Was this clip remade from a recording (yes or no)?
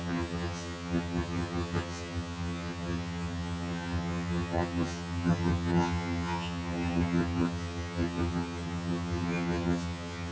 yes